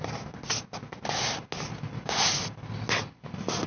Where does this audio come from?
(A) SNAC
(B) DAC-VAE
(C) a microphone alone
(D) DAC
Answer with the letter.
C